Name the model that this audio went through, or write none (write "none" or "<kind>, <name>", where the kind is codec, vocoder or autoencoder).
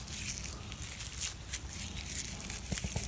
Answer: none